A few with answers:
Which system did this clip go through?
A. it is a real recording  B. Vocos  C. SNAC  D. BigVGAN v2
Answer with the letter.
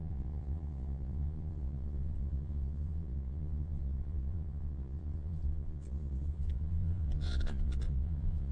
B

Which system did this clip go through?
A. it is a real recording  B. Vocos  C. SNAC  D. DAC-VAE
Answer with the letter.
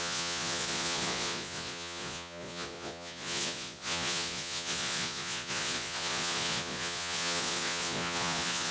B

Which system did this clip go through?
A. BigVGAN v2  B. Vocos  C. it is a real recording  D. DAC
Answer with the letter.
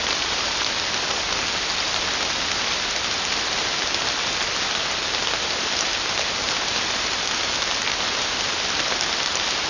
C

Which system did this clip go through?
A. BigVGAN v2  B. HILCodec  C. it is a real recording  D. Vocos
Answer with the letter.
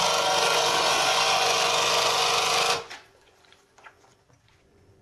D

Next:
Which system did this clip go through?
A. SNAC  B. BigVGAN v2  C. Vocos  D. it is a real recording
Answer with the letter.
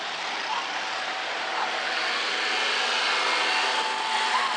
D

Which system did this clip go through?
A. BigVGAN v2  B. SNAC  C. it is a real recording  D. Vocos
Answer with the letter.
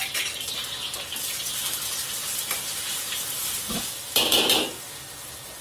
C